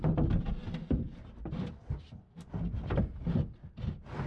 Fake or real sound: real